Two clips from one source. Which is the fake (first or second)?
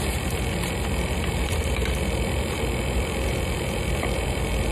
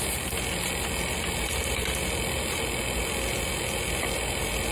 first